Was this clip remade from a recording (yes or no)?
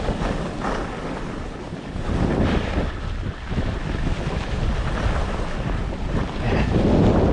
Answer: no